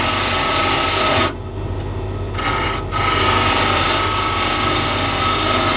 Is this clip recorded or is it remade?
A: recorded